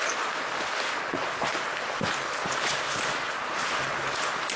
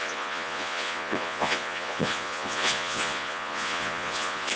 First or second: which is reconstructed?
second